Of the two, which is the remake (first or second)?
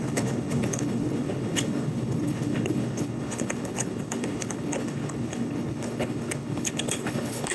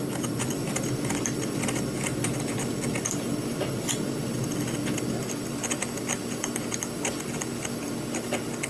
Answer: first